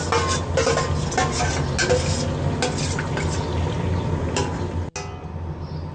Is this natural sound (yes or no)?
yes